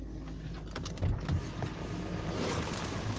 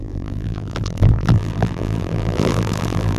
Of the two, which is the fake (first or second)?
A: second